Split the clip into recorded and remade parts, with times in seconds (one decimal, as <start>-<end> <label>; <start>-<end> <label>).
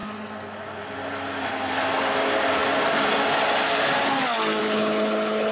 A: 0.0-4.6 recorded; 4.6-5.5 remade